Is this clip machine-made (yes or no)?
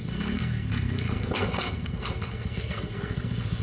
yes